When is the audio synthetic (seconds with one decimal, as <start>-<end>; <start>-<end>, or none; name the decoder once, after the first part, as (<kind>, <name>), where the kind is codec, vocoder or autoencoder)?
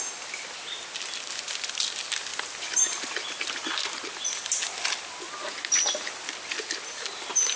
none